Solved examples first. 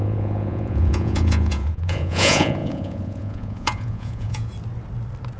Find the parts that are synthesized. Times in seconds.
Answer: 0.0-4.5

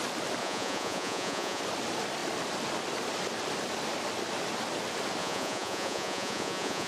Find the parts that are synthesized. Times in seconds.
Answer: 0.4-1.6; 5.2-6.9

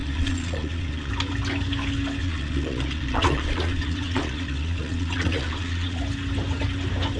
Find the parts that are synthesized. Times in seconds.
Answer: 0.0-1.1; 2.2-6.0

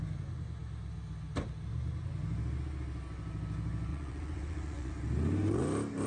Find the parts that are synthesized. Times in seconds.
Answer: 3.9-4.9

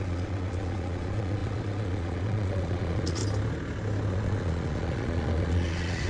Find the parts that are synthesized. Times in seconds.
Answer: 0.0-3.2; 4.1-6.1

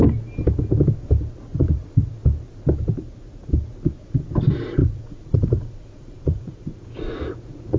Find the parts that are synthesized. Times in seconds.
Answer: 1.5-2.1; 4.8-7.8